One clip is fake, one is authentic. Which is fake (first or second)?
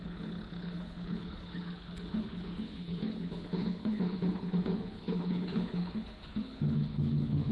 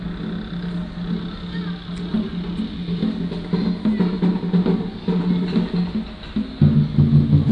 first